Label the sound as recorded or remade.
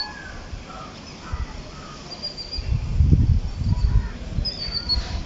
recorded